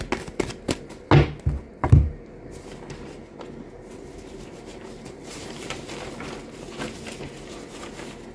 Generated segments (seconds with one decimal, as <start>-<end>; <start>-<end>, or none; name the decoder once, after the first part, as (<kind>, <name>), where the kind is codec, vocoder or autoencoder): 4.7-6.1 (vocoder, BigVGAN v2)